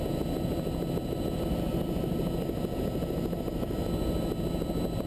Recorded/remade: recorded